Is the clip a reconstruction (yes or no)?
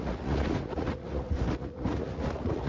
yes